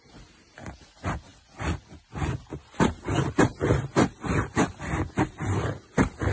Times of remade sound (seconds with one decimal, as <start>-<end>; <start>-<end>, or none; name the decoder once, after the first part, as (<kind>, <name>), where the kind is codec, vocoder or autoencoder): none